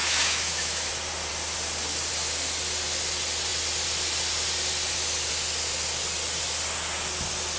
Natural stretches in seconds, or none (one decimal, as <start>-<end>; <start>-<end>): 0.9-7.6